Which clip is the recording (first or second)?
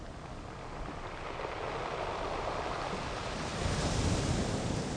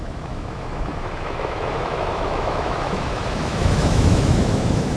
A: first